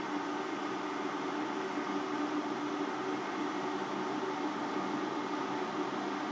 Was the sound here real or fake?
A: real